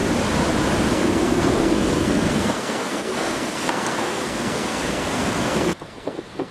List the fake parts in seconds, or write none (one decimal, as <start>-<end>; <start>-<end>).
0.9-6.5